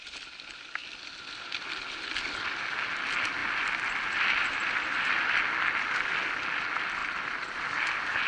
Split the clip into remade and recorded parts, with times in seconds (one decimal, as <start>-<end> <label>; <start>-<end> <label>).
0.0-3.4 recorded; 3.4-5.1 remade; 5.1-8.3 recorded